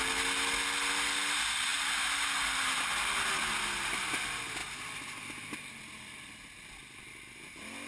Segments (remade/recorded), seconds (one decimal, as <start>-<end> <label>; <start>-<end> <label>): 0.0-7.9 recorded